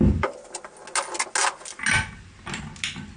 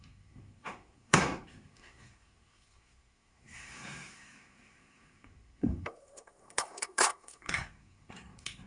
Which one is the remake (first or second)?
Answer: second